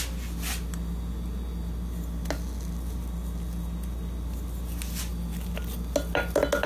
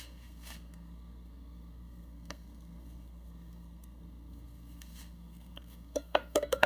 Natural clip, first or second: first